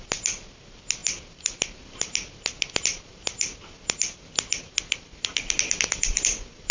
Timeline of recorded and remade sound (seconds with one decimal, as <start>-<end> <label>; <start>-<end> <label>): 0.0-6.7 recorded